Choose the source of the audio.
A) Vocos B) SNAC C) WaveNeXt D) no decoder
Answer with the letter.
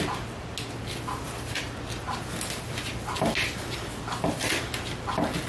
D